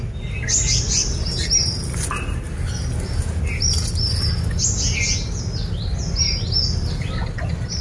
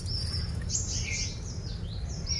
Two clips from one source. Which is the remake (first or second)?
second